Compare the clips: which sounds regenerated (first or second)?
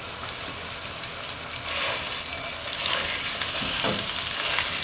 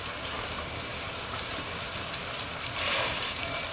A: second